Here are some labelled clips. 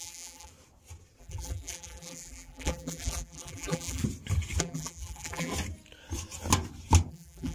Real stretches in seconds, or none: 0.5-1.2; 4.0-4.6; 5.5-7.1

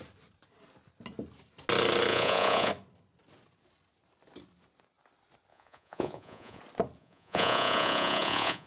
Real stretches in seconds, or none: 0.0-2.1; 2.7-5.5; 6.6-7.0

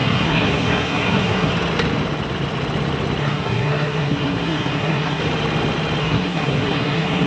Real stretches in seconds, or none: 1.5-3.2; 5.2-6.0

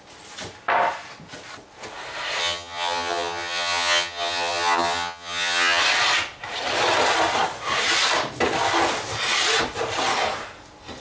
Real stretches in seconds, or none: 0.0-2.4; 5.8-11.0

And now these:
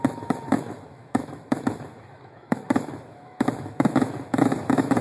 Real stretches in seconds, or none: none

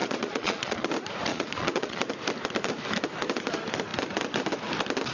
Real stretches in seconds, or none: 0.9-1.3; 2.1-5.1